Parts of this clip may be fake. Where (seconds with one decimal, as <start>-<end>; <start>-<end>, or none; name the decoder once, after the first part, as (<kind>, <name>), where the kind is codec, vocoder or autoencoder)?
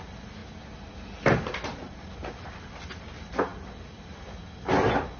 none